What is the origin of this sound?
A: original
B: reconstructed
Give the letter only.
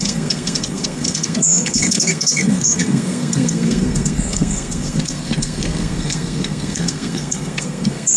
B